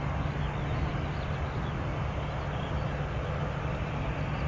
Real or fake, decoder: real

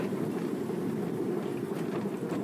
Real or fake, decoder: fake, vocoder, BigVGAN v2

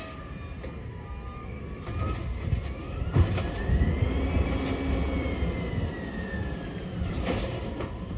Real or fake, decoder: real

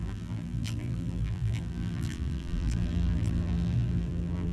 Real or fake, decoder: fake, vocoder, BigVGAN v2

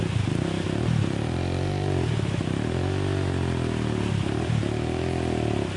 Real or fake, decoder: real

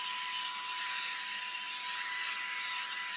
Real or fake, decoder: real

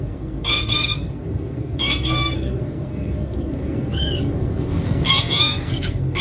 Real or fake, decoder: fake, codec, SNAC